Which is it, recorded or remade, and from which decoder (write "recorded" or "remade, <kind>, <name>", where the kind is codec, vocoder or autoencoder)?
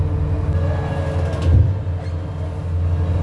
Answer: recorded